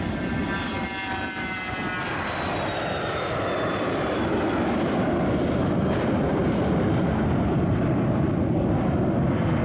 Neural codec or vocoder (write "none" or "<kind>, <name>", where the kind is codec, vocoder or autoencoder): none